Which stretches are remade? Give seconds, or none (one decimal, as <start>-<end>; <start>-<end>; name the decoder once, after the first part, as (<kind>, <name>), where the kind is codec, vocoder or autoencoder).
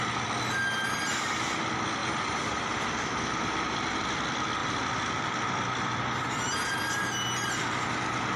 2.0-4.0 (vocoder, BigVGAN v2)